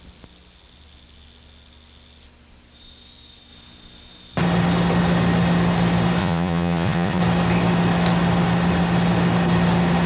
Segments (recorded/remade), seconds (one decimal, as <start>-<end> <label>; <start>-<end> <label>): 0.0-6.2 recorded; 6.2-7.2 remade; 7.2-10.1 recorded

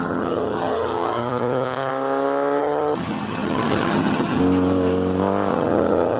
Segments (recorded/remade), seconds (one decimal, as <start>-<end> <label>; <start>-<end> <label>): 0.0-1.9 remade; 1.9-2.6 recorded; 2.6-4.4 remade; 4.4-5.5 recorded; 5.5-6.2 remade

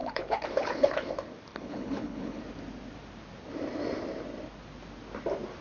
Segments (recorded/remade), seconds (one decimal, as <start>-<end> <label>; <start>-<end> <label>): 0.0-1.1 remade; 1.1-1.5 recorded; 1.5-2.4 remade; 2.4-5.6 recorded

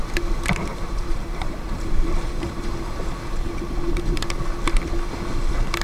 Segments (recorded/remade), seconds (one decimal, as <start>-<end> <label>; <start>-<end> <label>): 0.0-0.7 recorded; 0.7-4.2 remade; 4.2-5.8 recorded

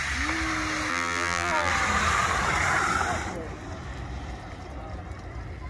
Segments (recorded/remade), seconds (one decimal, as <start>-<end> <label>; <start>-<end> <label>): 0.0-0.9 recorded; 0.9-1.7 remade; 1.7-5.7 recorded

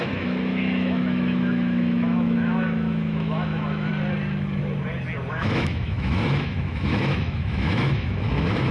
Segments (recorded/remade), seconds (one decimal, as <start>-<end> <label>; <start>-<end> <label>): 0.0-3.9 remade; 3.9-5.3 recorded; 5.3-8.7 remade